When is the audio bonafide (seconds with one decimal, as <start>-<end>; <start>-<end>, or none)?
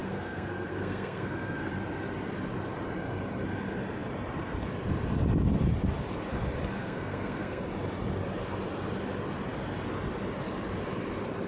1.7-6.8; 7.6-11.5